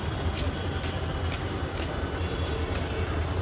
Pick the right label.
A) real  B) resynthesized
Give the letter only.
A